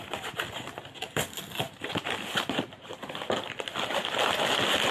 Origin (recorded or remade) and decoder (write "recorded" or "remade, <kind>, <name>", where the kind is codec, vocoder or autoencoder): recorded